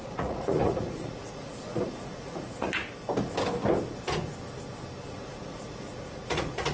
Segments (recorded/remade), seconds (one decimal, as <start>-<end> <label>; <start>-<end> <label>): 0.0-2.8 remade; 2.8-5.1 recorded; 5.1-6.7 remade